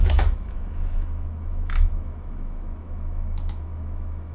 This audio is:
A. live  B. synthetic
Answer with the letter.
B